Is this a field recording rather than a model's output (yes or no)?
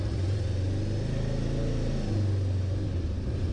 yes